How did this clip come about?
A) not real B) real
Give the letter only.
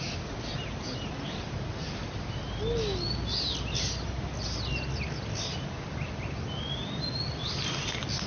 B